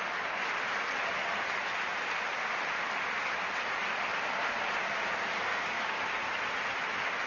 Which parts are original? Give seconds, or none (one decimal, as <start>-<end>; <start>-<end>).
0.0-5.5; 6.0-7.3